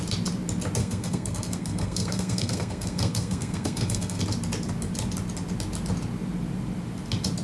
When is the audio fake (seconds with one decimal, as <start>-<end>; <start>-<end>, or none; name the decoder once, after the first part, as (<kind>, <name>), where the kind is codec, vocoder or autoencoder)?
0.8-4.2 (codec, SNAC)